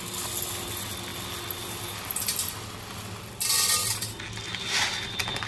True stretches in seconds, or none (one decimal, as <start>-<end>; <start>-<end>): 0.0-5.5